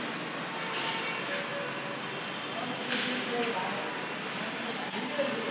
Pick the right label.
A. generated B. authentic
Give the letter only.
B